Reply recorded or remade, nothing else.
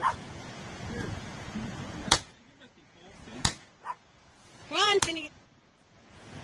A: remade